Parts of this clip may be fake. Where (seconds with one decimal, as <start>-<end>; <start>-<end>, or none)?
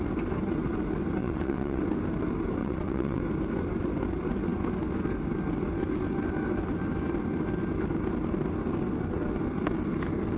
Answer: 1.2-1.8; 2.6-3.2